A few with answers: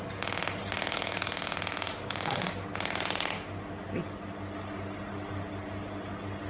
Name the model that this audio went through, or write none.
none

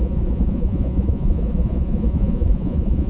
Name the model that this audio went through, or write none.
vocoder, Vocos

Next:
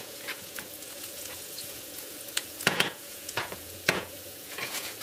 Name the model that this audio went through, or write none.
vocoder, Vocos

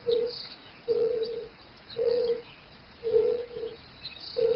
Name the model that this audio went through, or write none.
vocoder, Vocos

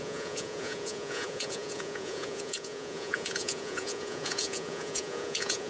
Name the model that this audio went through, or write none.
vocoder, Vocos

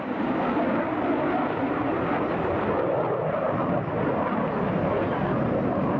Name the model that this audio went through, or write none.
none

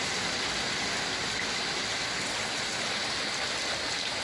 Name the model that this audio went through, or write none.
none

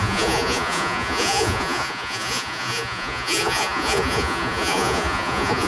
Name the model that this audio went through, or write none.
vocoder, Vocos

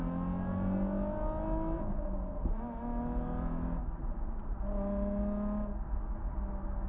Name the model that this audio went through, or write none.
none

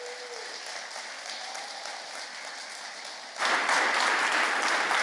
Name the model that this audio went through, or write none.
none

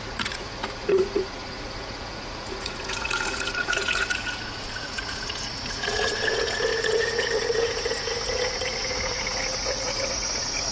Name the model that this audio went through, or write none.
vocoder, Vocos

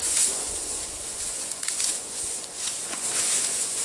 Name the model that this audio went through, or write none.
vocoder, Vocos